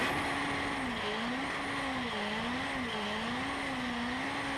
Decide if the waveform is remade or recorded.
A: recorded